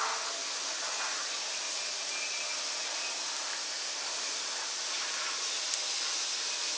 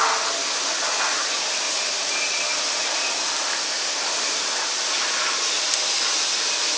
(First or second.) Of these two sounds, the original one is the first